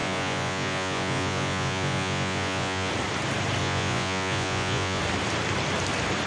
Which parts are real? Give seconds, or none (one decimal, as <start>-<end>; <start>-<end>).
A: 2.9-3.6; 5.0-6.3